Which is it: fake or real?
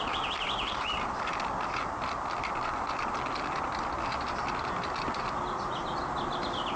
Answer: real